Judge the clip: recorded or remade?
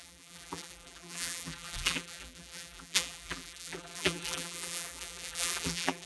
remade